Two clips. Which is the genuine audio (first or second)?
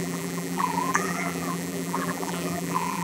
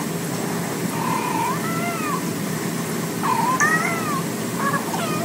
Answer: second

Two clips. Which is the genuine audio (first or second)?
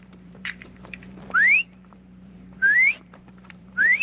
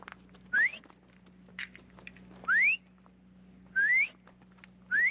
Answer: second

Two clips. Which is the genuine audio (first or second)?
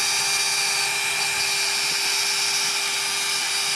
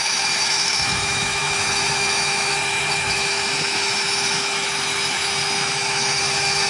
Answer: first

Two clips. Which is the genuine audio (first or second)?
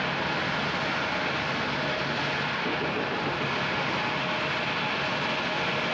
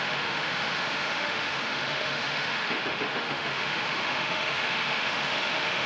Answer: first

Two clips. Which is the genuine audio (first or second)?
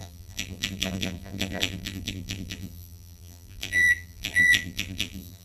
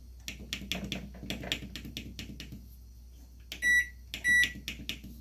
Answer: second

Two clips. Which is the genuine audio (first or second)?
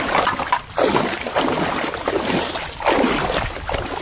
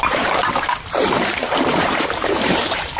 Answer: first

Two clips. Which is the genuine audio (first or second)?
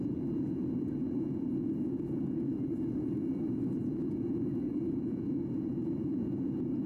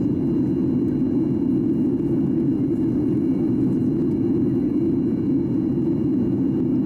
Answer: second